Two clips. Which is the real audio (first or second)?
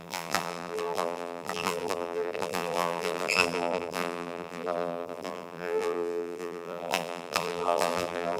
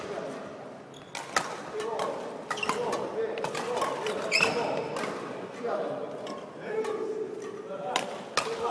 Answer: second